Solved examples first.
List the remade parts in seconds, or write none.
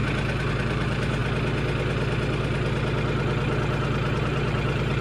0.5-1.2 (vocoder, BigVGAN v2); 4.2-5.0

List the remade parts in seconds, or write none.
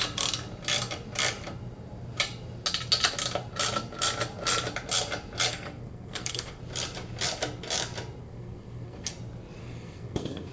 5.5-6.6 (codec, SNAC); 8.2-9.1; 9.6-10.5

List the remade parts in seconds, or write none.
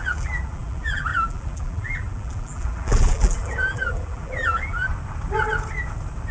0.0-4.9 (vocoder, BigVGAN v2)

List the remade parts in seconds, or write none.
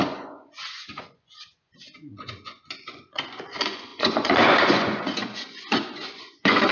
0.0-6.7 (vocoder, Vocos)